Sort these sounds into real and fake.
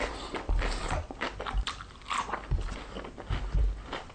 real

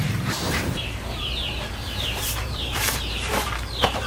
fake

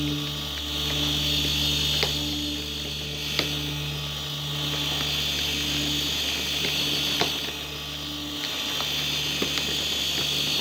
real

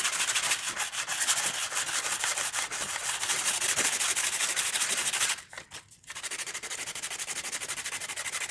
real